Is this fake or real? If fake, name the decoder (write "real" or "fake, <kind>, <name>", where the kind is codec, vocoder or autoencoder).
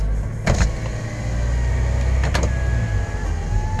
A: real